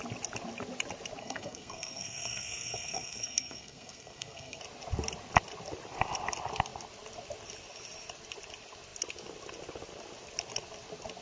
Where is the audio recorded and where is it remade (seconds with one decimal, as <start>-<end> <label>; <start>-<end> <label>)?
0.0-1.2 recorded; 1.2-4.6 remade; 4.6-11.2 recorded

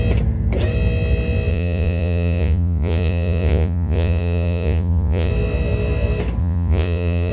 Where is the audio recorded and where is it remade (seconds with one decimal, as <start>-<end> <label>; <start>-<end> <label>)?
0.0-1.5 recorded; 1.5-5.3 remade; 5.3-6.4 recorded; 6.4-7.3 remade

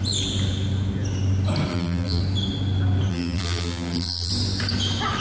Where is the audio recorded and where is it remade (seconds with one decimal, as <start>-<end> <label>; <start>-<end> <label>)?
0.0-1.7 recorded; 1.7-2.2 remade; 2.2-3.1 recorded; 3.1-4.3 remade; 4.3-5.2 recorded

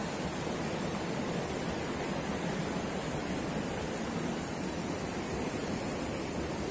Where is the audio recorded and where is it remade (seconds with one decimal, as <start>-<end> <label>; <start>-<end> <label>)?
0.0-6.7 recorded

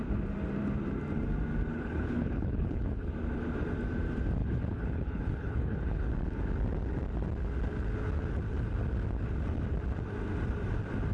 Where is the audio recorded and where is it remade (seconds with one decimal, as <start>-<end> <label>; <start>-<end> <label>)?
0.0-1.7 recorded; 1.7-3.1 remade; 3.1-4.4 recorded; 4.4-6.1 remade; 6.1-11.1 recorded

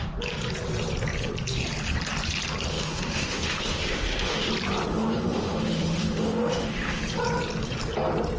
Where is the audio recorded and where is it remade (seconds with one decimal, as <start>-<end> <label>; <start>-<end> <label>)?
0.0-2.7 recorded; 2.7-4.5 remade; 4.5-4.9 recorded; 4.9-7.0 remade; 7.0-8.4 recorded

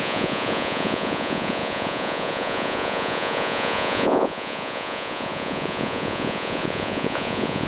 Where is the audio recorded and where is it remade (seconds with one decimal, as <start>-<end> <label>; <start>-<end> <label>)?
0.0-7.7 remade

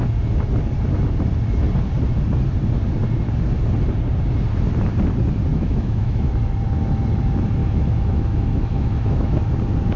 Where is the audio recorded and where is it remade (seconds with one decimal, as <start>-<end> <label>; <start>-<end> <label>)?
0.0-5.5 recorded; 5.5-6.3 remade; 6.3-7.6 recorded; 7.6-9.4 remade; 9.4-10.0 recorded